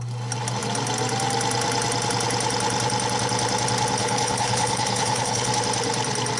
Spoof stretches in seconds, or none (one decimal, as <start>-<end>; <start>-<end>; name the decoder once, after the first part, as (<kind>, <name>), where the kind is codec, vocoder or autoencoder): 4.0-5.5 (codec, HILCodec)

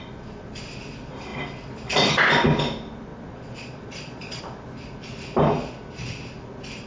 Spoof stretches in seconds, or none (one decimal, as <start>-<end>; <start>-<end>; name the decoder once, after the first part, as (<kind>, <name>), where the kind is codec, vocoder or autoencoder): 3.1-4.4 (vocoder, Vocos)

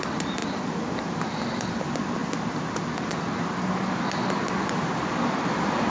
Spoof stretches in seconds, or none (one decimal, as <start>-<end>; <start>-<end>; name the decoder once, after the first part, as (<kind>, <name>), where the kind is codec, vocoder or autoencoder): none